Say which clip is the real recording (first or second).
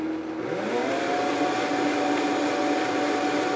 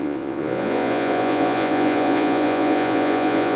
first